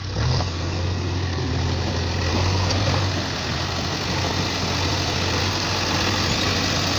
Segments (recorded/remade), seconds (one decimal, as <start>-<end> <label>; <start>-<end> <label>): 0.0-1.5 remade; 1.5-2.3 recorded; 2.3-3.0 remade; 3.0-7.0 recorded